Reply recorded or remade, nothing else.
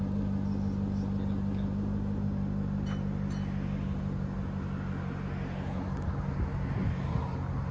recorded